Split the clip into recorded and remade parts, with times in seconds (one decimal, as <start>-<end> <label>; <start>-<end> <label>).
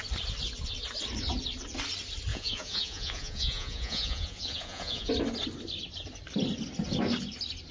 0.0-2.3 recorded; 2.3-5.1 remade; 5.1-7.7 recorded